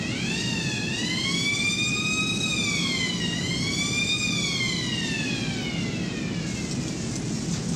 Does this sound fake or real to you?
real